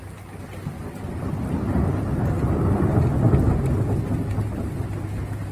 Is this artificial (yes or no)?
no